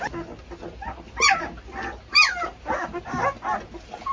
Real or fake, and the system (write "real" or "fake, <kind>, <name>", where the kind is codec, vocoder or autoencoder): real